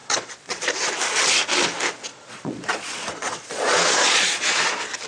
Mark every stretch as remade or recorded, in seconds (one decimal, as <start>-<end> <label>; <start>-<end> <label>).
0.0-0.7 remade; 0.7-2.1 recorded; 2.1-4.4 remade; 4.4-5.1 recorded